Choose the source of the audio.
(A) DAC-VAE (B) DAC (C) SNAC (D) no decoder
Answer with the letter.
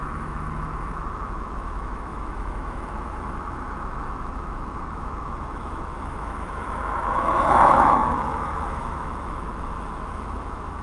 A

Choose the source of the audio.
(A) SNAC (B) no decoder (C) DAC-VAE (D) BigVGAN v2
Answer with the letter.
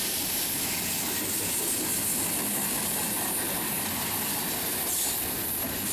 B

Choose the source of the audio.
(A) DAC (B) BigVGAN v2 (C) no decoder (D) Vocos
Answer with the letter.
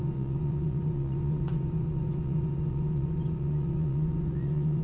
D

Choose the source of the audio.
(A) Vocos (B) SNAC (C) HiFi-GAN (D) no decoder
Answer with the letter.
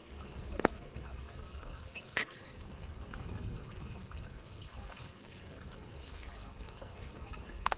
B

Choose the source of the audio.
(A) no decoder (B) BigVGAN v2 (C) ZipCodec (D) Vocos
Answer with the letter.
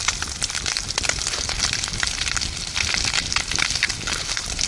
B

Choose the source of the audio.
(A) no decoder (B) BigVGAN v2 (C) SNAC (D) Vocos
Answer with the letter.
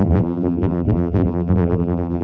B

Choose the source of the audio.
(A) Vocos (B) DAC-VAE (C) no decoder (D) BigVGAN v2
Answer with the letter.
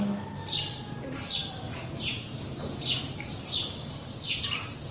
C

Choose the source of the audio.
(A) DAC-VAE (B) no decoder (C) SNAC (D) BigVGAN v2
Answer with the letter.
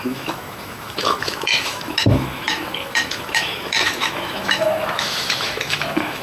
A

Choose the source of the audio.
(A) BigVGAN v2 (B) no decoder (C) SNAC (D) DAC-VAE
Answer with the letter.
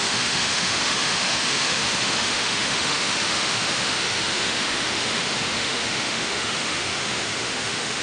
D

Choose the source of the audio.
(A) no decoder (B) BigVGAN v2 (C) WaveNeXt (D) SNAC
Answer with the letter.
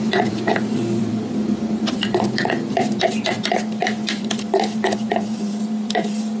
B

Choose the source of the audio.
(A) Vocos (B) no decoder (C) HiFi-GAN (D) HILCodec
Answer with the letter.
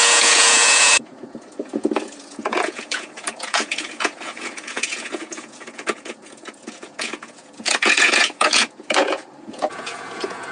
A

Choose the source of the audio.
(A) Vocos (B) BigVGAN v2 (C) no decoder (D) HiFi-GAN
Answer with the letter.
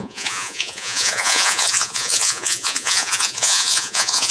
A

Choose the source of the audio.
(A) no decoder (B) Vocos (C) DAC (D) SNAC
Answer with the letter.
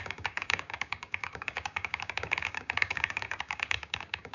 C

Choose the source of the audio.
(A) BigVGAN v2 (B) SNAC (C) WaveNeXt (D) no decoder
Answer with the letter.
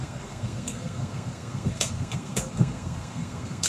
B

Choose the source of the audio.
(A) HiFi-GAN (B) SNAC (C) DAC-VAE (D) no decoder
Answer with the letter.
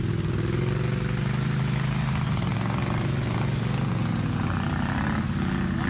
D